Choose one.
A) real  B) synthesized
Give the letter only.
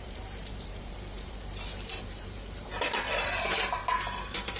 B